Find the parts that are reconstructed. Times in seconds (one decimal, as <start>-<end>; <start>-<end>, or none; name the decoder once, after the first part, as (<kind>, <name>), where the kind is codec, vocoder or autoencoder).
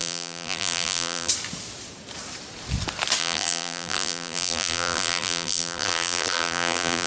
0.0-1.3 (vocoder, BigVGAN v2); 3.2-7.1